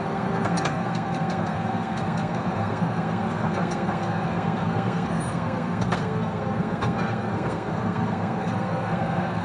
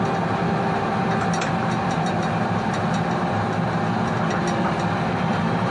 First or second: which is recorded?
second